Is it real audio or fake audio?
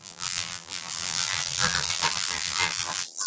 fake